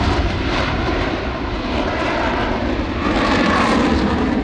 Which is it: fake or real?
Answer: fake